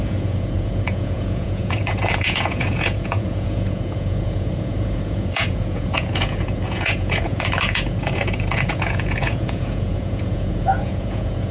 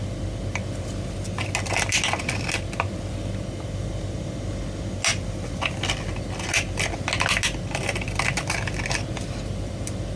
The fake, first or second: first